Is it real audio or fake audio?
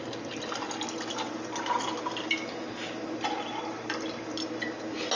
real